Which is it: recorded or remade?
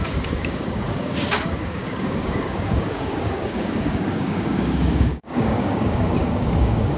remade